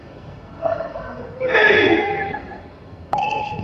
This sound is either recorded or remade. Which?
remade